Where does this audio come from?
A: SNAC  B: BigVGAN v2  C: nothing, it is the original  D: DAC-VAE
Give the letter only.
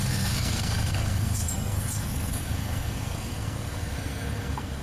A